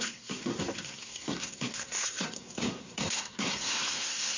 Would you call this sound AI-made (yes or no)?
yes